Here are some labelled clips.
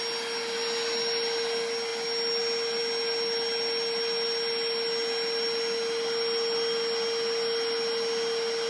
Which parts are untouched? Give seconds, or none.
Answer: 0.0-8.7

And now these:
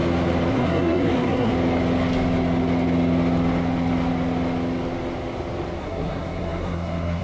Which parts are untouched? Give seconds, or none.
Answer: 0.0-0.5; 1.5-5.8

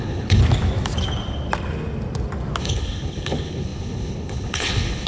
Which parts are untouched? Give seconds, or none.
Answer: 0.4-2.6

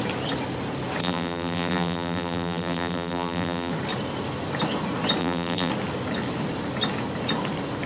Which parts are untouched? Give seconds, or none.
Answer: 0.0-1.0; 3.7-5.2; 5.7-7.9

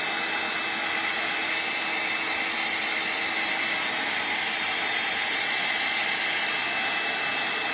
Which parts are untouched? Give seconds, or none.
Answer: 0.0-7.7

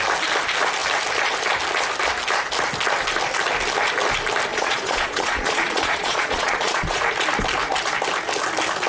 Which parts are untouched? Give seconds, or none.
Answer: 0.0-4.5; 7.0-8.9